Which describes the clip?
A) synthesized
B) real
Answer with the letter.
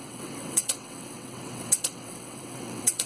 A